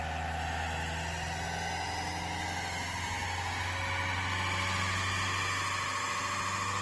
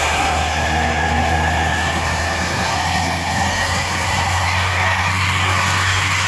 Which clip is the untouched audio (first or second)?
first